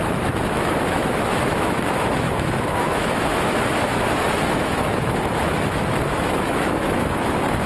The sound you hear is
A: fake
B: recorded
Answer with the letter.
A